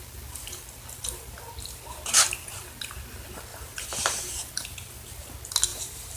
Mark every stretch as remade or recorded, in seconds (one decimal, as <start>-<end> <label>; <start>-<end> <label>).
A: 0.0-3.5 recorded; 3.5-4.5 remade; 4.5-5.7 recorded; 5.7-6.2 remade